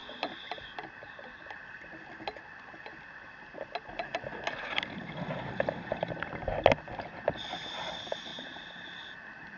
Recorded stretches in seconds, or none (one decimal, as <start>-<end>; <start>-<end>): 1.8-8.3; 8.9-9.6

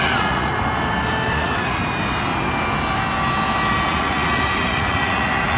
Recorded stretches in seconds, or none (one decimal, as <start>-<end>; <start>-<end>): 0.5-1.3; 1.8-3.9